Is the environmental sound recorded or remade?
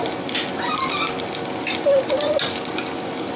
recorded